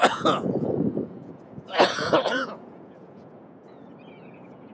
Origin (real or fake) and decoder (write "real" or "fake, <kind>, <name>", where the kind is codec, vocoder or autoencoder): fake, vocoder, Vocos